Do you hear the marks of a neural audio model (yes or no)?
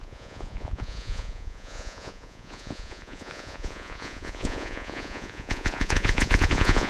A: yes